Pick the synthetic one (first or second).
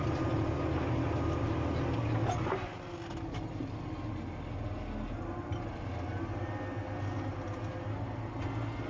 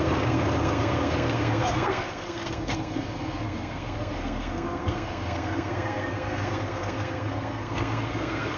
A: second